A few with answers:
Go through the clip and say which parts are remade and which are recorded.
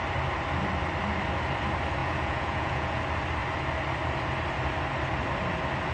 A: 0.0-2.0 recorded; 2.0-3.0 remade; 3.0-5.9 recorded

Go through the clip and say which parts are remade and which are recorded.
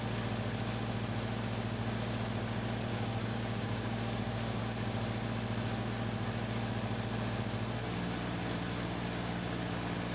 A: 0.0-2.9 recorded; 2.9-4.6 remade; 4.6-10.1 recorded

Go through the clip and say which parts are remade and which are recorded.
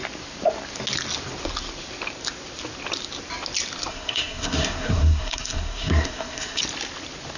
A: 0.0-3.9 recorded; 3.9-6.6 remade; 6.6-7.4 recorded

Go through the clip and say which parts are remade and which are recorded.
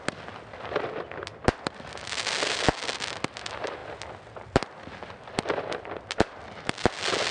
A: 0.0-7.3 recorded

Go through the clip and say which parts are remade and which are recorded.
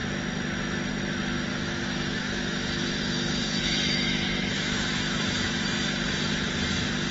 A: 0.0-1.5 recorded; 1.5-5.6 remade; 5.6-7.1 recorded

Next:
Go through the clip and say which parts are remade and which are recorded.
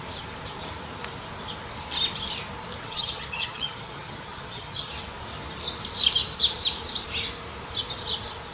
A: 0.0-2.8 recorded; 2.8-4.9 remade; 4.9-8.5 recorded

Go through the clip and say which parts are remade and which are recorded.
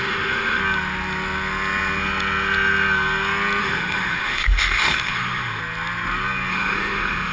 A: 0.0-0.6 remade; 0.6-3.6 recorded; 3.6-5.6 remade; 5.6-6.5 recorded; 6.5-7.3 remade